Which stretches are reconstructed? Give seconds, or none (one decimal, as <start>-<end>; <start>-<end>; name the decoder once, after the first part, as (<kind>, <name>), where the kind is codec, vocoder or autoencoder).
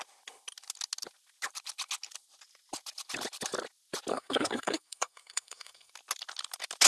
4.1-5.9 (codec, SNAC)